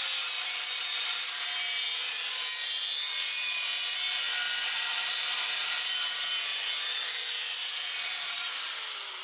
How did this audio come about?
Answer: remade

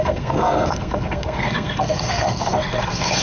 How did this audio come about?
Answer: remade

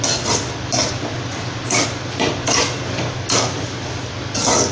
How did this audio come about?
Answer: recorded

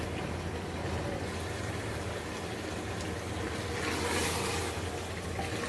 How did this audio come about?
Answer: recorded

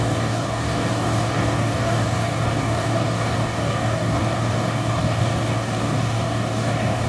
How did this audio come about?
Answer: remade